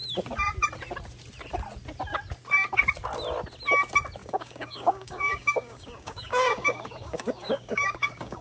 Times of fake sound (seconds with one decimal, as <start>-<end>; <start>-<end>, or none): 4.2-8.4